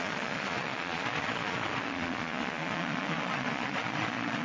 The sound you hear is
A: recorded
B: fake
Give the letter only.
B